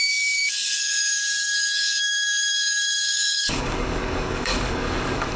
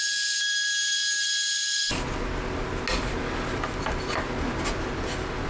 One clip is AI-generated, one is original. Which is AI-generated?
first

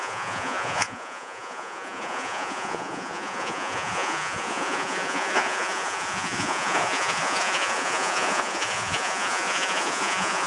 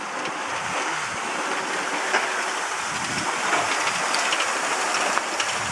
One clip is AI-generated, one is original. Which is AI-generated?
first